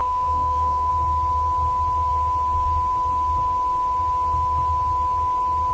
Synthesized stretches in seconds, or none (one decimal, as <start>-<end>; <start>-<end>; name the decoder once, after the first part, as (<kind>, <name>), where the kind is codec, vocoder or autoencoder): 0.0-0.9 (codec, SNAC)

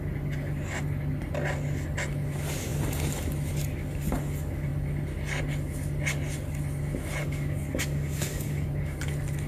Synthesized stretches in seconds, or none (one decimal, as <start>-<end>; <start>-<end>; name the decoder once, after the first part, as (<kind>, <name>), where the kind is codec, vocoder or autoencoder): 7.2-9.0 (codec, DAC)

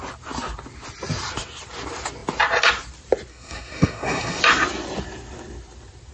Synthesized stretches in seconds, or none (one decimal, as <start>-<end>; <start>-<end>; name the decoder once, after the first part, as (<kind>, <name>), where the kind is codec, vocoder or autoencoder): 3.3-4.4 (codec, SNAC)

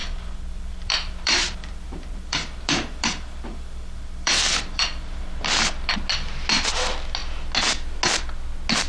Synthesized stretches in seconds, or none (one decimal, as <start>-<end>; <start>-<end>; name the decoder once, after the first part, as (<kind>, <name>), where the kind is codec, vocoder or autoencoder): 0.0-5.2 (vocoder, BigVGAN v2)

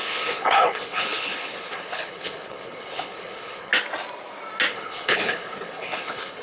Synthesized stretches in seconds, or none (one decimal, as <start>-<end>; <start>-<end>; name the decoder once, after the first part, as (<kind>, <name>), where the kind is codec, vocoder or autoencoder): 0.0-3.7 (codec, HILCodec); 4.7-6.4

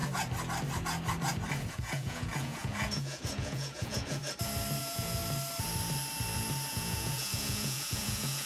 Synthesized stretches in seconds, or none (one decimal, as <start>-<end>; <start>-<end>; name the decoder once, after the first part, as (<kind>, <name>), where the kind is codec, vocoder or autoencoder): 1.7-4.2 (vocoder, Vocos); 4.8-5.2; 6.7-8.5

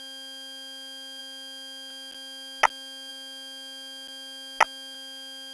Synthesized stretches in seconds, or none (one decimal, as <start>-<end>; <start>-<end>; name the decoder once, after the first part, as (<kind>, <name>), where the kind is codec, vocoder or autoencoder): none

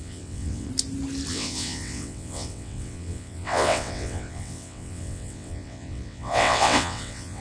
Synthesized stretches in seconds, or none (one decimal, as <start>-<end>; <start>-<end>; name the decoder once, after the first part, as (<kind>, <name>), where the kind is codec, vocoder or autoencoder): 0.0-0.7 (vocoder, WaveNeXt); 1.3-7.4